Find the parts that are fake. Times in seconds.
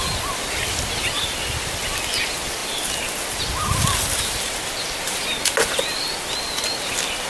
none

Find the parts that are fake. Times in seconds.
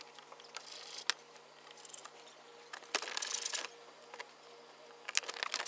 none